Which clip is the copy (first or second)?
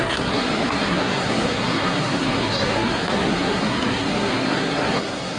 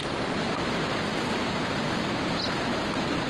first